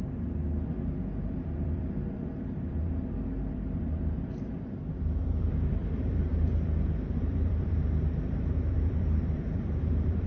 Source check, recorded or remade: remade